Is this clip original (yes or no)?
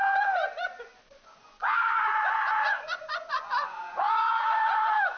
no